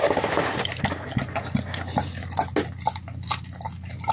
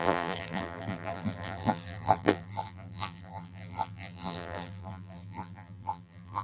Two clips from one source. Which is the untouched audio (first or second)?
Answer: first